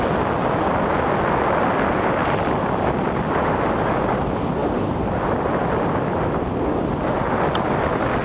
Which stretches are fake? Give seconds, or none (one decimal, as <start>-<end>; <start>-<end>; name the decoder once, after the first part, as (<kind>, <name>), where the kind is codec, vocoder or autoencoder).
none